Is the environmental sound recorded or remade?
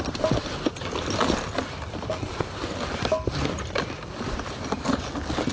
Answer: recorded